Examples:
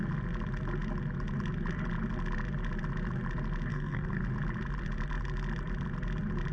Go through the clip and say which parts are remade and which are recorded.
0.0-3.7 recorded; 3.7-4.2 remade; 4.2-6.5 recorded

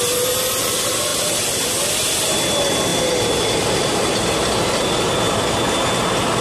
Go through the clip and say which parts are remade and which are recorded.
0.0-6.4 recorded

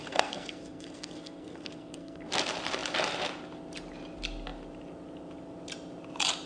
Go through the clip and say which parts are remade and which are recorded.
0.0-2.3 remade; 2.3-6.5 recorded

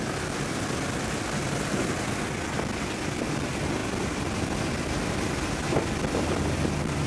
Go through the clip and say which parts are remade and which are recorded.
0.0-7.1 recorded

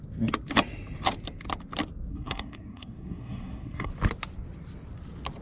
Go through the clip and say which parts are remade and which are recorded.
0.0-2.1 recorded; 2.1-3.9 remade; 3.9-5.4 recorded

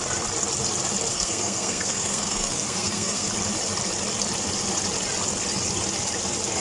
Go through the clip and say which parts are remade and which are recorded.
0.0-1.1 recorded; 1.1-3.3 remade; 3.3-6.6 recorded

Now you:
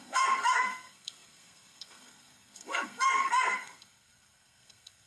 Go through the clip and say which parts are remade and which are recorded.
0.0-5.1 remade